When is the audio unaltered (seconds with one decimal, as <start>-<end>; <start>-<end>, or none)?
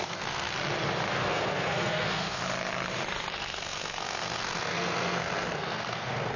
0.5-1.1; 2.4-3.3